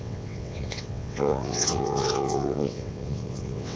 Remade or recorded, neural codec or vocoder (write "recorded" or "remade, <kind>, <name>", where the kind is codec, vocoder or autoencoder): remade, vocoder, WaveNeXt